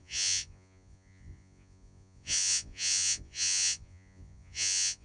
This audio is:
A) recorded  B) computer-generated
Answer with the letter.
B